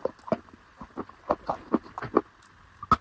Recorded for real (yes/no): yes